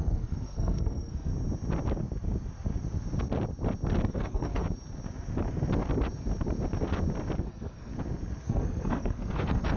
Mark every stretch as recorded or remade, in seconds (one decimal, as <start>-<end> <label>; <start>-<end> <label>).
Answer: 0.0-1.3 remade; 1.3-4.1 recorded; 4.1-4.6 remade; 4.6-7.4 recorded; 7.4-7.9 remade; 7.9-8.4 recorded; 8.4-9.8 remade